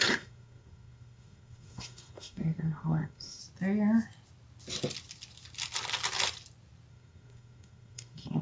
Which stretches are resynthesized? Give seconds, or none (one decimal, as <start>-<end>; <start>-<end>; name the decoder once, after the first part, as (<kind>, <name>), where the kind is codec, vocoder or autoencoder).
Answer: 0.0-3.4 (codec, SNAC); 6.9-8.4